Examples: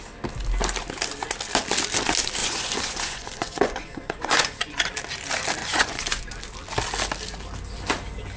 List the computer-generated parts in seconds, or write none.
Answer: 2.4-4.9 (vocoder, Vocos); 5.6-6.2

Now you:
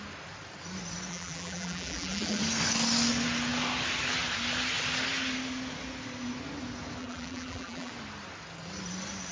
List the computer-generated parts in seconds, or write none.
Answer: 1.1-2.4 (vocoder, BigVGAN v2); 7.0-7.9